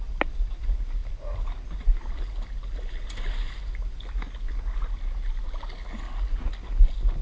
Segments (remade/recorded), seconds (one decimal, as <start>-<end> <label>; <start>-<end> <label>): 0.0-7.2 recorded